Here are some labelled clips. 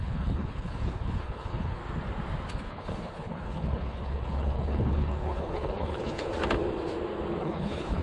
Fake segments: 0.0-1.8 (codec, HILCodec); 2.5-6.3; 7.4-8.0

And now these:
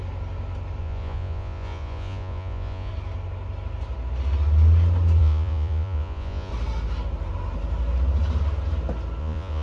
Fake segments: 0.8-2.9 (vocoder, Vocos); 5.2-6.5; 9.2-9.6

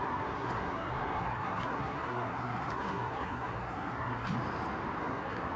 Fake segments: 0.0-4.3 (codec, SNAC); 5.0-5.6

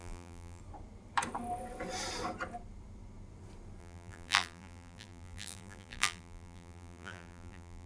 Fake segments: 0.0-0.6 (vocoder, BigVGAN v2); 3.8-7.9

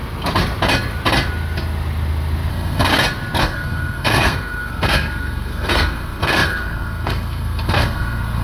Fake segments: 2.5-2.9 (codec, SNAC); 3.4-8.4